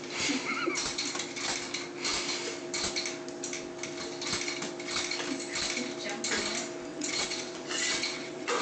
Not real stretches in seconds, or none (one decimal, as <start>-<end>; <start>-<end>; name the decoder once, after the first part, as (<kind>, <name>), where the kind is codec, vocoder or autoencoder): 6.9-8.6 (vocoder, WaveNeXt)